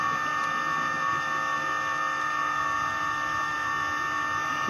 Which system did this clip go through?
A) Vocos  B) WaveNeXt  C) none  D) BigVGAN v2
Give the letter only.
C